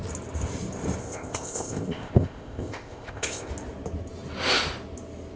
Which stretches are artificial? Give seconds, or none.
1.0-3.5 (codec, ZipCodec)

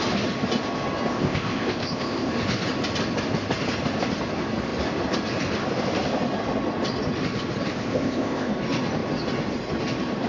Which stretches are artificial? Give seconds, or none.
1.1-2.3 (codec, ZipCodec); 7.7-8.5

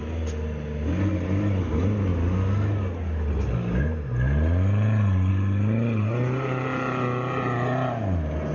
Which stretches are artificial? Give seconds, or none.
none

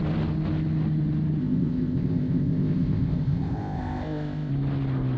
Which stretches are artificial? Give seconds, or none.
1.4-4.5 (codec, ZipCodec)

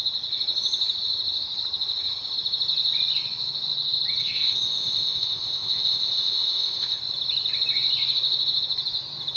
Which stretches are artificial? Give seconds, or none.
4.2-7.0 (codec, ZipCodec)

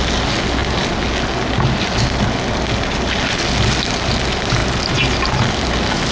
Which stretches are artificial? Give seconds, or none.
none

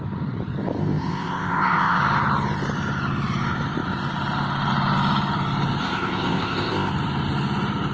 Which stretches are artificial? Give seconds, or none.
0.8-2.0 (codec, ZipCodec); 5.8-6.9